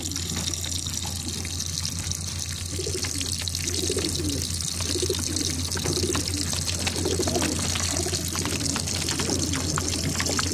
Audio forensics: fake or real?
real